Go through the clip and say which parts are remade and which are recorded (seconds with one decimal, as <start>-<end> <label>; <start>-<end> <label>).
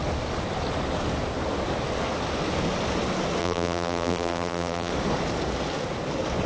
0.0-3.4 recorded; 3.4-4.9 remade; 4.9-6.5 recorded